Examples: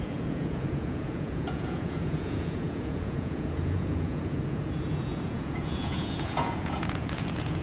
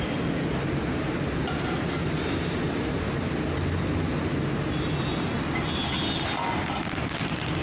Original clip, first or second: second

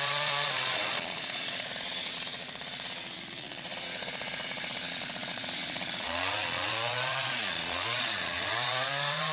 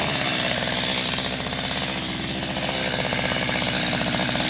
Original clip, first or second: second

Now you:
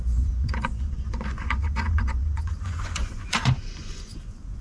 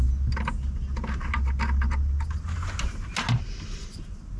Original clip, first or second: second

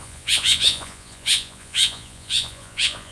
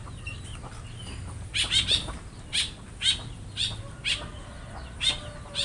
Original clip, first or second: second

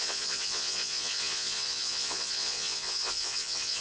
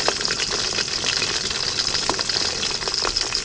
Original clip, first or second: second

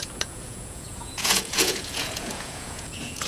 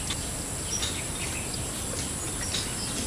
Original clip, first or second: second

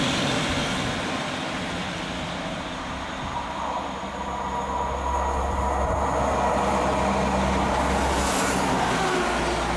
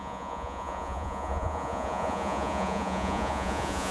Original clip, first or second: first